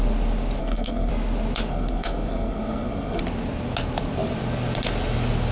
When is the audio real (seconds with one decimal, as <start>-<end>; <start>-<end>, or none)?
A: 0.0-0.6; 1.1-1.7; 3.2-5.5

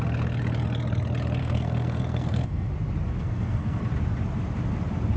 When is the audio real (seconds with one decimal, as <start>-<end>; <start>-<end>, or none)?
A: 0.0-1.4; 2.7-3.2; 3.8-5.2

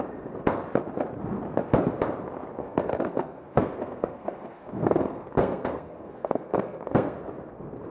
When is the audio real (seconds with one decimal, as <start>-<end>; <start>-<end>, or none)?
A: 0.0-2.6; 7.2-7.9

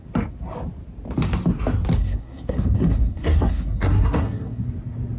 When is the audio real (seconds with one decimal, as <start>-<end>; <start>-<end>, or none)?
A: 0.0-2.0; 4.6-5.2

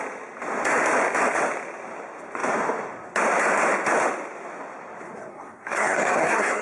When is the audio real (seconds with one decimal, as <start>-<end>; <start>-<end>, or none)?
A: 0.0-5.3